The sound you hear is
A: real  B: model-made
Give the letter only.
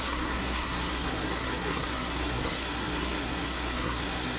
B